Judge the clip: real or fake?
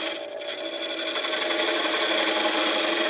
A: real